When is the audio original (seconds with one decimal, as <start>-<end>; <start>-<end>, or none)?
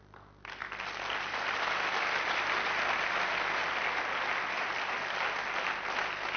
0.0-6.4